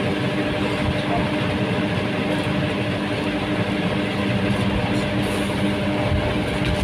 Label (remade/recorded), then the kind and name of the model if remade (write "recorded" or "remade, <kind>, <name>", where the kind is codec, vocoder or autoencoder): recorded